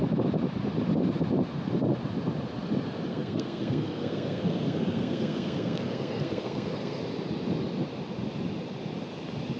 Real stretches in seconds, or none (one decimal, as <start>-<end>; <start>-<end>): 0.0-3.1; 7.0-9.6